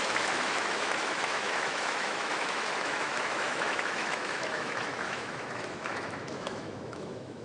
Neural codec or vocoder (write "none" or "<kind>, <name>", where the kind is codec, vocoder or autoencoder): autoencoder, DAC-VAE